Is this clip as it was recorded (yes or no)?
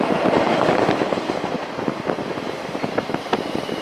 yes